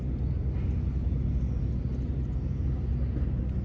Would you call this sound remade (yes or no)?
no